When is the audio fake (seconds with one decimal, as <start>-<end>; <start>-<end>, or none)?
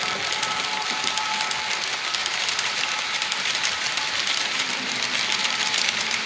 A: 2.2-4.7; 5.4-6.3